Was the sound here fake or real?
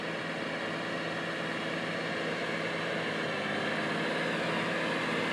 real